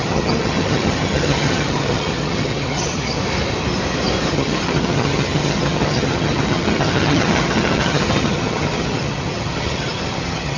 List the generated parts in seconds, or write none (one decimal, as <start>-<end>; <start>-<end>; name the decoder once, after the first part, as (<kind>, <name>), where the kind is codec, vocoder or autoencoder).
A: 0.0-3.2 (vocoder, HiFi-GAN); 4.3-10.6